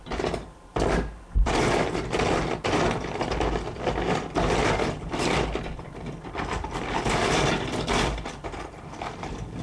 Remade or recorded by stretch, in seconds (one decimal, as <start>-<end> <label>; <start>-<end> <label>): 0.0-9.6 recorded